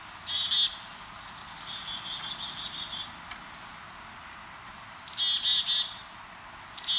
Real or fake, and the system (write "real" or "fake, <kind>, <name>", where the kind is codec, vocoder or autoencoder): real